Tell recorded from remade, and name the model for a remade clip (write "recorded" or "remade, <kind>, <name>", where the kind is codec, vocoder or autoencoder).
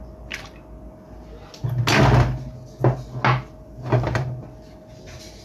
recorded